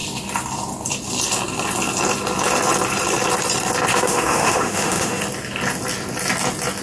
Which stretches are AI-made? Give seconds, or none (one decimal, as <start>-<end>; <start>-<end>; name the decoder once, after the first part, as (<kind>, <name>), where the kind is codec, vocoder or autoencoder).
3.9-5.2 (autoencoder, DAC-VAE)